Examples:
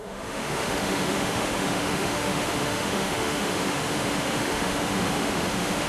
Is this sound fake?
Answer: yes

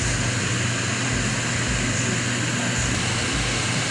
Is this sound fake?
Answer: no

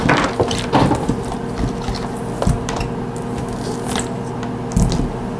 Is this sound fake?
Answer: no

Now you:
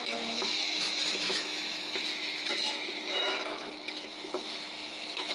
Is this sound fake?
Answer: yes